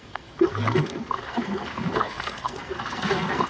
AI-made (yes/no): yes